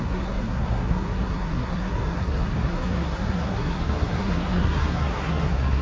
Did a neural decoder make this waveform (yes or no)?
yes